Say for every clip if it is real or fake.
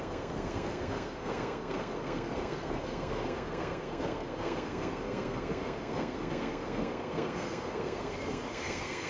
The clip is fake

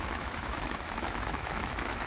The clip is fake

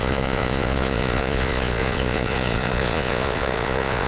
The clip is fake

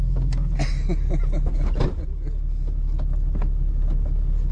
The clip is real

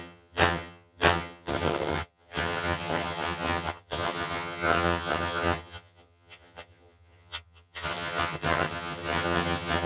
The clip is fake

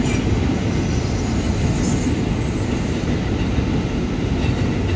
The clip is real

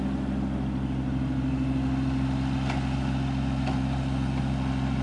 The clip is real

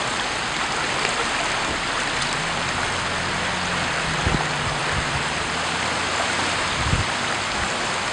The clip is real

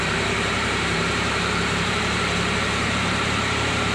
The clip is fake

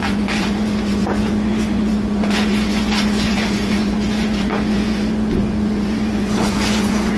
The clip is fake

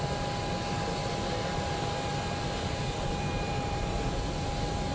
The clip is real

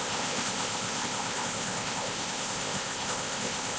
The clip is fake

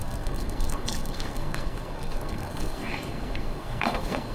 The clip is fake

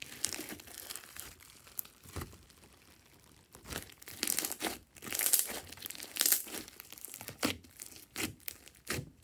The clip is fake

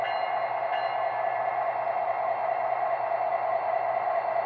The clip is real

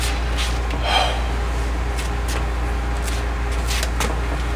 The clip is real